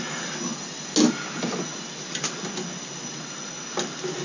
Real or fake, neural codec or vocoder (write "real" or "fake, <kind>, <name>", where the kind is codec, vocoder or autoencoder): real